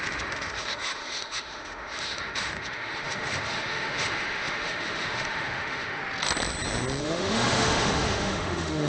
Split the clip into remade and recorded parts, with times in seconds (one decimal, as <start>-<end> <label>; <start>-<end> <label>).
0.0-6.0 remade; 6.0-7.0 recorded; 7.0-8.9 remade